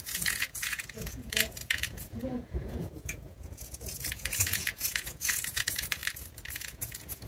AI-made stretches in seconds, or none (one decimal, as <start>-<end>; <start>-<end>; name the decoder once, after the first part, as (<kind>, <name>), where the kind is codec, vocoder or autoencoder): 0.0-6.0 (vocoder, Vocos); 6.5-7.3